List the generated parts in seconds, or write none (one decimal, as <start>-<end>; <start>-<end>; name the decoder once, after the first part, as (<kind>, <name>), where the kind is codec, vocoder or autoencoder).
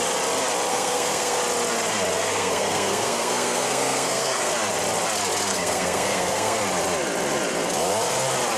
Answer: 0.7-1.4 (codec, SNAC); 2.1-4.5; 5.5-6.6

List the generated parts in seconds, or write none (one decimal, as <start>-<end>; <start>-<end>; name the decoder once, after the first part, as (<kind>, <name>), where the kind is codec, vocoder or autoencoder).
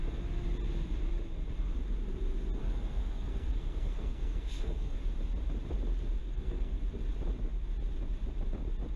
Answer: 2.6-5.0 (codec, SNAC); 6.2-6.8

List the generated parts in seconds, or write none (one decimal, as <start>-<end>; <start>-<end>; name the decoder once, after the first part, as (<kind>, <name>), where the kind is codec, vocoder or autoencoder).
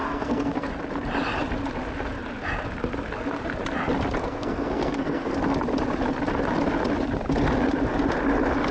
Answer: 0.0-0.7 (codec, SNAC); 4.2-5.3